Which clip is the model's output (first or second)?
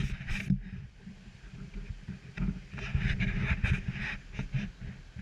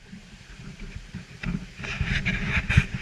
second